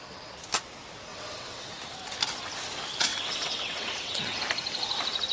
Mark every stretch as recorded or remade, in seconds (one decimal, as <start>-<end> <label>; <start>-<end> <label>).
0.0-1.1 recorded; 1.1-1.7 remade; 1.7-3.1 recorded; 3.1-4.4 remade; 4.4-5.3 recorded